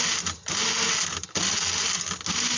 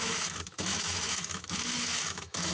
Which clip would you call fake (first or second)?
second